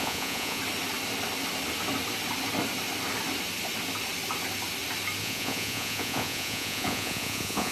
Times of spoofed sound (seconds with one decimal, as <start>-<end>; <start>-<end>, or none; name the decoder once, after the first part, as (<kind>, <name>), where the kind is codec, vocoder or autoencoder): 0.0-0.6 (vocoder, Vocos); 5.2-7.7